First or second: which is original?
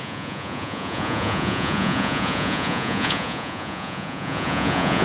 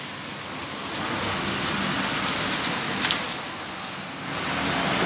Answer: second